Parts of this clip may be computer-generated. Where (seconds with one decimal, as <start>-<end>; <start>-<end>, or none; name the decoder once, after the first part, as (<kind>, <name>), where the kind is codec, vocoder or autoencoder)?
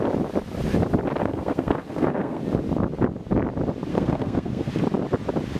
1.2-2.4 (codec, SNAC); 3.9-4.7